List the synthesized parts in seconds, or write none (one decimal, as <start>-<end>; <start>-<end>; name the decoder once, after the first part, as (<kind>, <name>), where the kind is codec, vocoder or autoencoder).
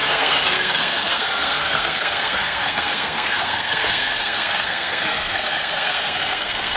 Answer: 0.0-6.8 (codec, SNAC)